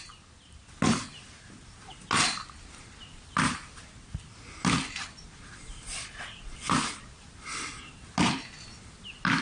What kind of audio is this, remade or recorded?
recorded